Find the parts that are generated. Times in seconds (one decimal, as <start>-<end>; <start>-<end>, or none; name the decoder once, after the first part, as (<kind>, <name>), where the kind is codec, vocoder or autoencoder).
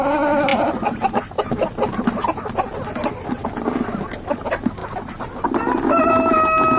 none